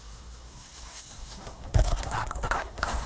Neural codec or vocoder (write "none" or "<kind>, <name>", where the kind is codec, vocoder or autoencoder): codec, SNAC